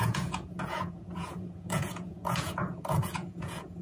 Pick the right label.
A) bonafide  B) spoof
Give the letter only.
B